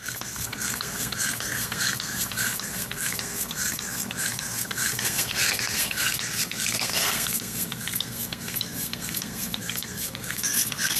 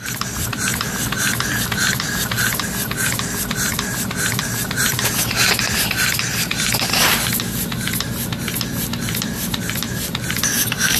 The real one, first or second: second